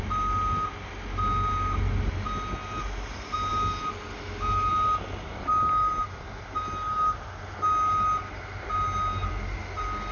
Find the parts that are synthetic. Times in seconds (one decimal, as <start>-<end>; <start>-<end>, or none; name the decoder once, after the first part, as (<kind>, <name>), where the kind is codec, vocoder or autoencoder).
none